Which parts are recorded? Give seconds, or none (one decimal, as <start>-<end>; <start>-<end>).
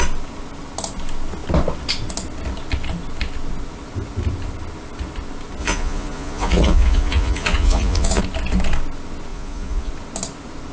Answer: 0.0-5.6; 8.2-9.3; 9.9-10.7